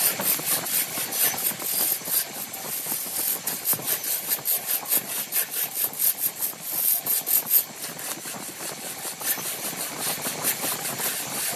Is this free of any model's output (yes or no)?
yes